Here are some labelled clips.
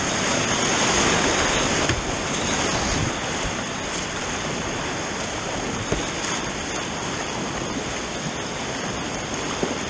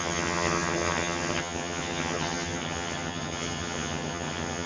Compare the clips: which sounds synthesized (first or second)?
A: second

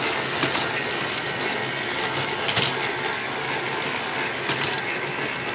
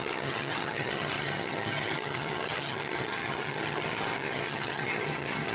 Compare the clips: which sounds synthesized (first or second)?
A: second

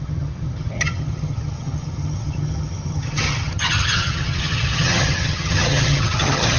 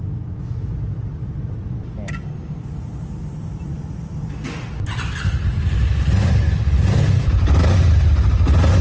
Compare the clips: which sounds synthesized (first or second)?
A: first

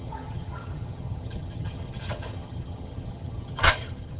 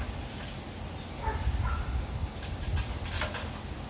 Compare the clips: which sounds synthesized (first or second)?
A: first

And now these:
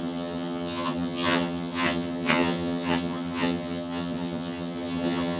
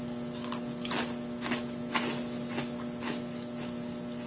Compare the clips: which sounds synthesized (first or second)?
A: first